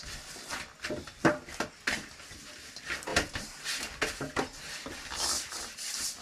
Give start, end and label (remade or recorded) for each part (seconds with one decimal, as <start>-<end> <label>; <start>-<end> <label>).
0.0-6.2 recorded